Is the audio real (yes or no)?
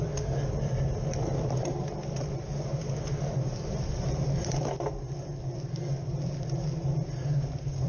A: yes